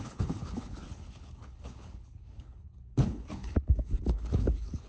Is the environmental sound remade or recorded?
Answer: remade